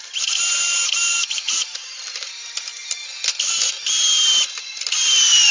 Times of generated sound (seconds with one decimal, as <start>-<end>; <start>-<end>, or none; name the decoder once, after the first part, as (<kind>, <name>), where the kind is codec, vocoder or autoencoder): none